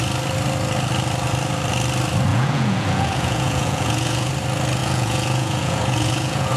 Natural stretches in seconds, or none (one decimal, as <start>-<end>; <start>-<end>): 0.0-2.3; 4.3-4.8